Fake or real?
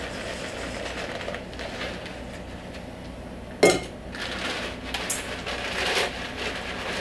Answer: real